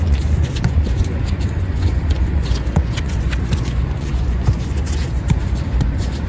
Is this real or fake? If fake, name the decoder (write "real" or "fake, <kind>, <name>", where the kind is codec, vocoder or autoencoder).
fake, vocoder, Vocos